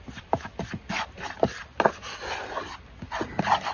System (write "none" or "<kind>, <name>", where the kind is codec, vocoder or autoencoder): none